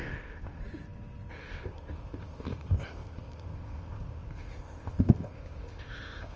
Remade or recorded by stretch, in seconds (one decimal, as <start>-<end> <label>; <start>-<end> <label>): 0.0-0.6 remade; 0.6-1.3 recorded; 1.3-6.4 remade